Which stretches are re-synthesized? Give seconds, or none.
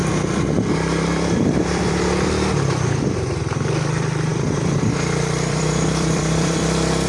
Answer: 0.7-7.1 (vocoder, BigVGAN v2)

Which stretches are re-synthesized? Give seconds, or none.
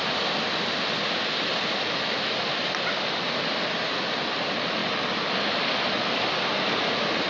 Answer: none